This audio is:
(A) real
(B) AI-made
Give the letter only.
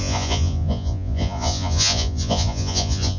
B